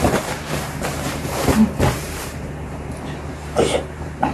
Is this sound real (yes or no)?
no